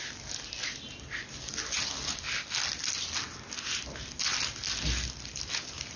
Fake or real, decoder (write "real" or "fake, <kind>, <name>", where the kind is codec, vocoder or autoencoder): real